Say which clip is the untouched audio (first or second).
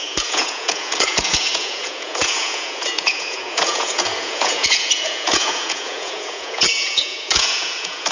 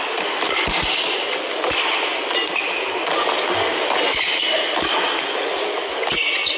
second